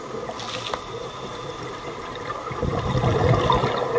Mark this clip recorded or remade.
recorded